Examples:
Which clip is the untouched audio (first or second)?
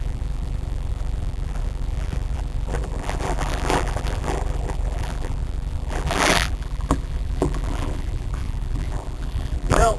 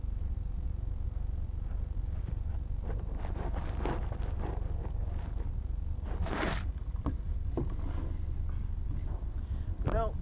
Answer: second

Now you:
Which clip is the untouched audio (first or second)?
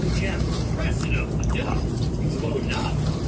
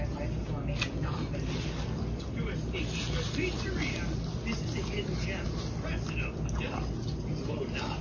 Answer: second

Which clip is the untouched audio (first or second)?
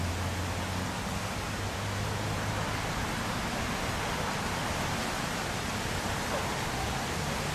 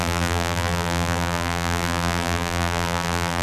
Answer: first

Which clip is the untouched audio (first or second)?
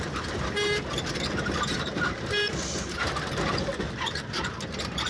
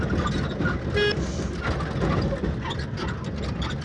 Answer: second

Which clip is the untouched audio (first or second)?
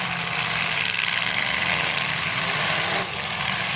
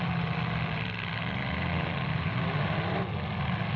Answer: second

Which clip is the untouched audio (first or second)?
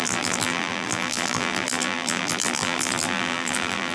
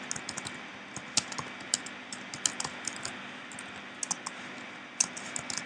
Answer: second